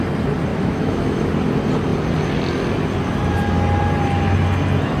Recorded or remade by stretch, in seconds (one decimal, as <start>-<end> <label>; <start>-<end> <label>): 0.0-0.5 recorded; 0.5-1.3 remade; 1.3-5.0 recorded